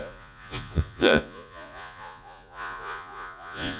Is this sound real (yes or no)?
no